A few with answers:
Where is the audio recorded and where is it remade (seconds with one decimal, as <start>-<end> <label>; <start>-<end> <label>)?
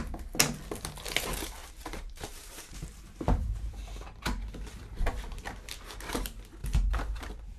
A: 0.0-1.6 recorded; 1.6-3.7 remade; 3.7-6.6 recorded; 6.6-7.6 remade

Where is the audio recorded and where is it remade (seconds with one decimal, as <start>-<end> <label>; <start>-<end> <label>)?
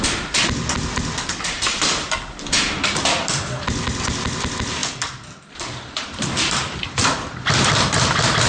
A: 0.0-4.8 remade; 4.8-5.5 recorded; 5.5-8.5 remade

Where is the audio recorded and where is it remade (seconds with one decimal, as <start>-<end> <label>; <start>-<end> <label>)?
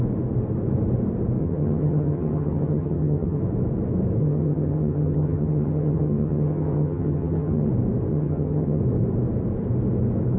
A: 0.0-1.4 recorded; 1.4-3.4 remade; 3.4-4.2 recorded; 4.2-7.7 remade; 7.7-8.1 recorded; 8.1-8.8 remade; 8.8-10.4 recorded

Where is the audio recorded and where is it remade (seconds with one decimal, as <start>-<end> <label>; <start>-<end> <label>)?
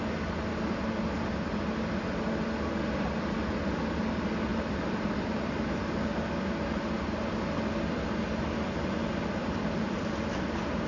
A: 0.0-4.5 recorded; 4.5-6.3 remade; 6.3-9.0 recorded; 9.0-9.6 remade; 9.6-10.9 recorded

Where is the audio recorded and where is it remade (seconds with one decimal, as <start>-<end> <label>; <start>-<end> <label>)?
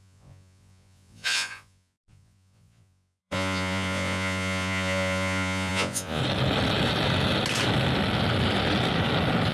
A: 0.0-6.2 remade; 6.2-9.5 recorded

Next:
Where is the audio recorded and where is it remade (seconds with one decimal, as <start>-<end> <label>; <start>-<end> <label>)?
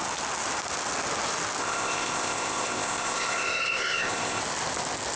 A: 0.0-1.6 recorded; 1.6-4.4 remade; 4.4-5.2 recorded